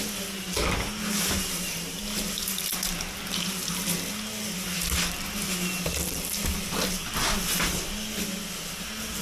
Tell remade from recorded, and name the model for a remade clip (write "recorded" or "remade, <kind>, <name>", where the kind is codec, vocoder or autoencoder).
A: recorded